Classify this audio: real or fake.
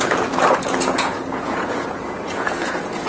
fake